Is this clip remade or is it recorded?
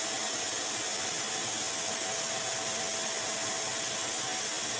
recorded